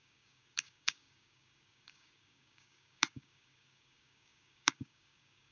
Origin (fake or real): fake